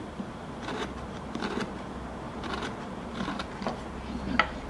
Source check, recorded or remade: recorded